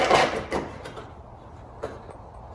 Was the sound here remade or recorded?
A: recorded